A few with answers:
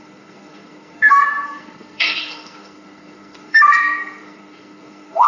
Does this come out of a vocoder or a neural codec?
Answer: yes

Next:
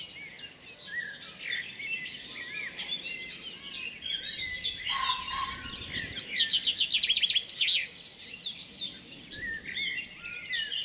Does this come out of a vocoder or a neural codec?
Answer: no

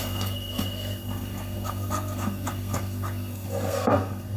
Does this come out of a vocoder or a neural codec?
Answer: yes